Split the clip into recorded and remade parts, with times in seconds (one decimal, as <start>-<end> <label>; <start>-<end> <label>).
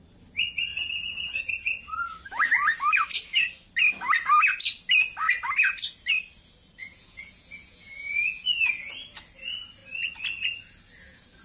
0.0-0.7 recorded; 0.7-1.4 remade; 1.4-6.8 recorded; 6.8-8.9 remade; 8.9-11.4 recorded